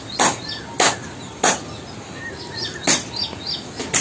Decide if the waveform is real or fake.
real